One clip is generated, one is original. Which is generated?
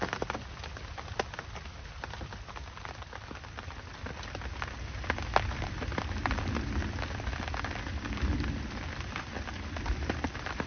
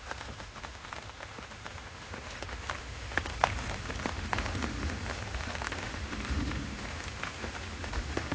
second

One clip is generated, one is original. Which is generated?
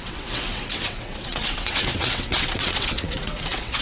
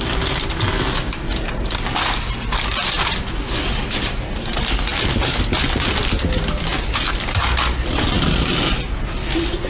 first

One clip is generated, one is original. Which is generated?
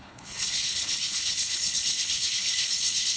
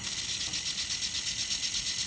first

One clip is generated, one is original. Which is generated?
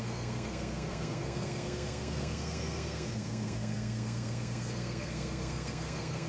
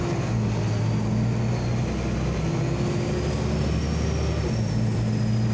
first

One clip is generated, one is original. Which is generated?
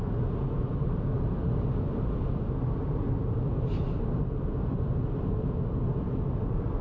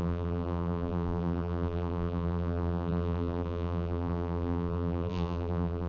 second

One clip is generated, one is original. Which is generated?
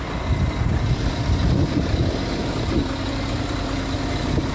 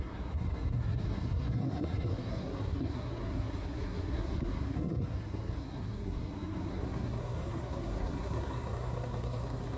second